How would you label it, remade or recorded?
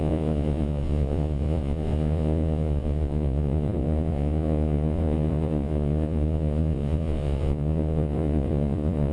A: remade